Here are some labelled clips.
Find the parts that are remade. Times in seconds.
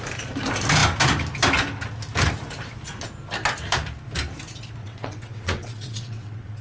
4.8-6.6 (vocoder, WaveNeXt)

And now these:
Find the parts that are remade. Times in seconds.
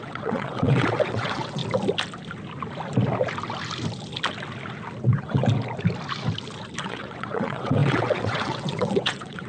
0.0-1.6 (vocoder, WaveNeXt); 5.0-5.4; 6.8-9.5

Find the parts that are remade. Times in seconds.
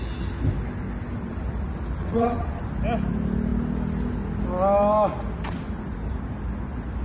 2.0-2.6 (vocoder, WaveNeXt)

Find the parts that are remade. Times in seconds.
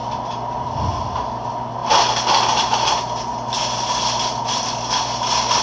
none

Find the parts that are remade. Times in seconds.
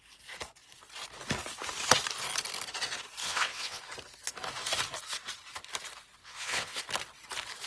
3.2-3.8 (vocoder, WaveNeXt); 6.2-6.8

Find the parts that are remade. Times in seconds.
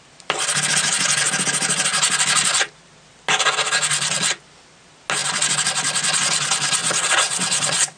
6.8-8.0 (vocoder, WaveNeXt)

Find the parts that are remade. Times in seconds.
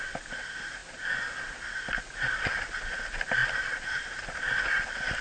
none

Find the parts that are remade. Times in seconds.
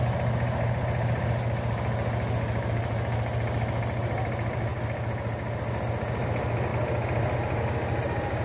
none